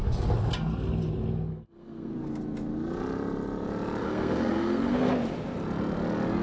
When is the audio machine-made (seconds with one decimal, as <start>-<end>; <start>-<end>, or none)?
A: 1.5-2.1; 4.0-5.1